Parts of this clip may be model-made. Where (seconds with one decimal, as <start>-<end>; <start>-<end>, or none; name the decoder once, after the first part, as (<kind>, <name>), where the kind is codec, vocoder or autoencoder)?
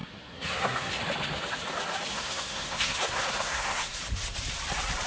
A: 0.0-1.0 (codec, SNAC); 2.1-4.0